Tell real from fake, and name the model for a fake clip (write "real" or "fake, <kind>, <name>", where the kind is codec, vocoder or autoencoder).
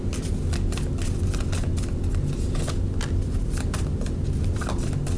real